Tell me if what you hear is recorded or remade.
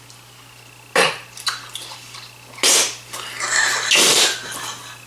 recorded